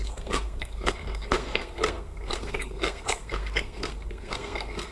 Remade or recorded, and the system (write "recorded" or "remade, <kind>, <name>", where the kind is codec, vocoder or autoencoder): remade, codec, SNAC